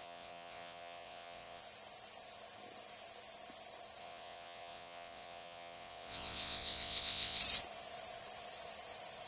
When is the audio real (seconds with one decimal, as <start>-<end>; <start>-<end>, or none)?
1.6-4.0; 7.4-9.3